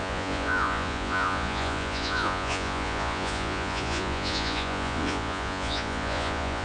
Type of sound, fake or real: fake